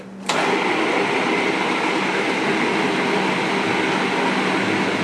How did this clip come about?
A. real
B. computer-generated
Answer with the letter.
A